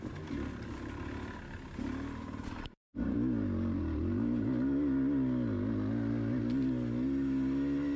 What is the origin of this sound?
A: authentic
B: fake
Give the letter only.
A